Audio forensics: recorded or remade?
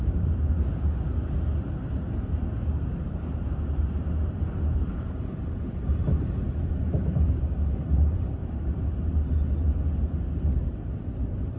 recorded